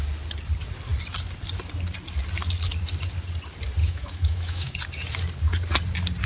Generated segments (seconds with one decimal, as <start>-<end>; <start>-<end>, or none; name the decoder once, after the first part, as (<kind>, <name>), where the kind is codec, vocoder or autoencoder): 3.8-4.7 (autoencoder, DAC-VAE)